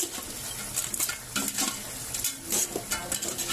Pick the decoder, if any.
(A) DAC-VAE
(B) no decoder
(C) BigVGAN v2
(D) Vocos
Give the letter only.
B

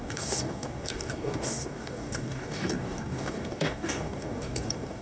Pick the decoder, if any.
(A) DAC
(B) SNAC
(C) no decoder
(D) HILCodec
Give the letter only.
A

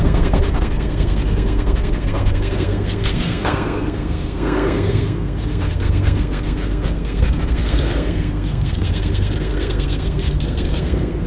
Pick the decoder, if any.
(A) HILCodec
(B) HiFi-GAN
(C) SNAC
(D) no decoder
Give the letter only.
C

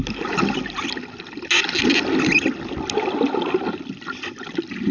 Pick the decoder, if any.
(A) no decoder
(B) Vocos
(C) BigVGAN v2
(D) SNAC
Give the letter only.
A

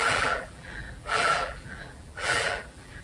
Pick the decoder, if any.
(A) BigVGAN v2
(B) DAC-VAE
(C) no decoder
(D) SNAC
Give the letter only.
A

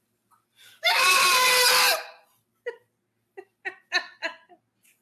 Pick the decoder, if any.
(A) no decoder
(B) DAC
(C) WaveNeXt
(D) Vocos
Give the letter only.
A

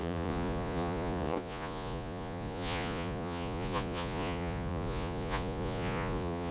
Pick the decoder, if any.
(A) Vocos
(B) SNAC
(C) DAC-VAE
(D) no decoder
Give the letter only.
A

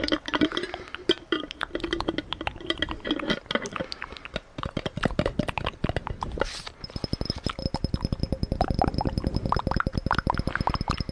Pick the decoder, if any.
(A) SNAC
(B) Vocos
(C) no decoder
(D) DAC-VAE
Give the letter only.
C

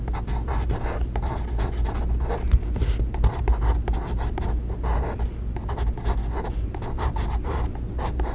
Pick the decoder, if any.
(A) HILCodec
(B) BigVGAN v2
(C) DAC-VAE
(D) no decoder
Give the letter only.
D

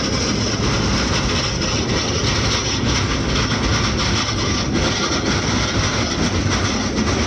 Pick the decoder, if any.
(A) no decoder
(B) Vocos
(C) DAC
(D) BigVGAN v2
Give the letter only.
A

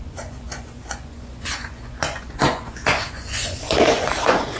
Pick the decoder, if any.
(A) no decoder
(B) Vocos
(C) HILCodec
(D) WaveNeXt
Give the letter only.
B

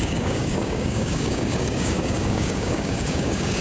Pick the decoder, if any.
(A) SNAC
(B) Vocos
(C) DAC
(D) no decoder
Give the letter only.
C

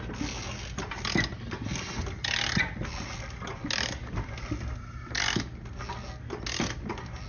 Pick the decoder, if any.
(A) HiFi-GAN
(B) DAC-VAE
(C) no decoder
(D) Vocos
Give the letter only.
C